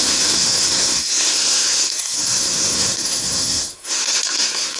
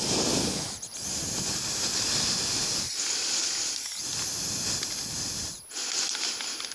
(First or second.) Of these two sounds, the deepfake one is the first